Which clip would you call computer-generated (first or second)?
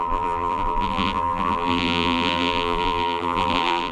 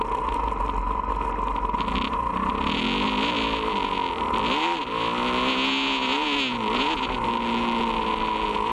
first